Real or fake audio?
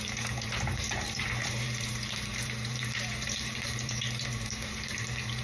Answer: fake